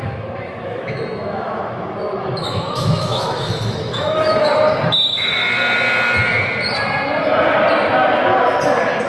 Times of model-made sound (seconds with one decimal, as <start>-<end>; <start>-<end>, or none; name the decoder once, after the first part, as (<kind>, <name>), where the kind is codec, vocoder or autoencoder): 0.0-4.5 (autoencoder, DAC-VAE)